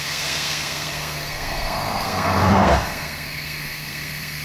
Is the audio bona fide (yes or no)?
no